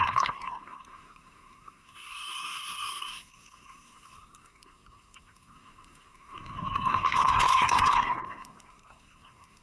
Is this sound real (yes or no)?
no